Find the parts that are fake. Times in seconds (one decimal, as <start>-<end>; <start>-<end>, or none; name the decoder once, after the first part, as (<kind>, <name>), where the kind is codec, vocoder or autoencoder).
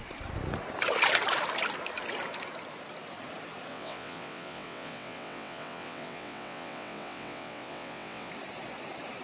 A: 3.7-8.3 (vocoder, WaveNeXt)